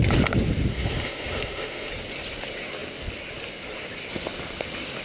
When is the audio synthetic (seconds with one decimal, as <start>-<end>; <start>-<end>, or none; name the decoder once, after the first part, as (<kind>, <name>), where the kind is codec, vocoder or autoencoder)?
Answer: 0.7-1.9 (autoencoder, DAC-VAE)

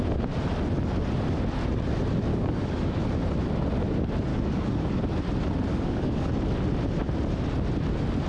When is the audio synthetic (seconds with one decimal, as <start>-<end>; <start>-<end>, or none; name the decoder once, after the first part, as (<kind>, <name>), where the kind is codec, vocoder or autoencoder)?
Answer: 2.3-3.0 (codec, DAC); 4.3-5.0; 5.7-6.3